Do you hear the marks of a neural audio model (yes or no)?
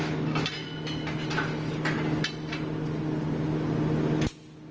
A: no